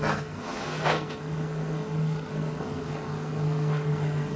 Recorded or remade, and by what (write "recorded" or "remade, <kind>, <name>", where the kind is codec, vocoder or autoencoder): remade, codec, SNAC